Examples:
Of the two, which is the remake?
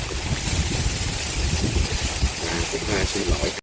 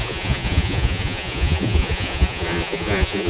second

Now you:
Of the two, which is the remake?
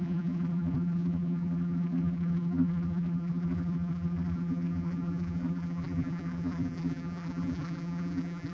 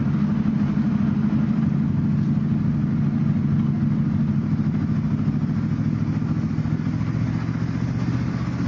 first